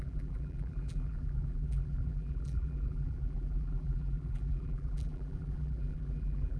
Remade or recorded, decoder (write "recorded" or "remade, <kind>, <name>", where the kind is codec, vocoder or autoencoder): remade, vocoder, BigVGAN v2